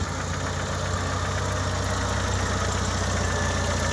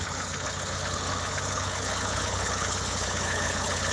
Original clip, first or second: first